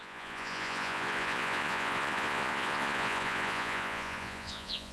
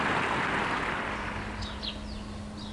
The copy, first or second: first